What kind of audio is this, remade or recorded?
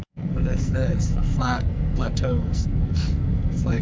remade